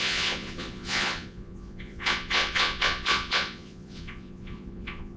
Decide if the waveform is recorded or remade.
remade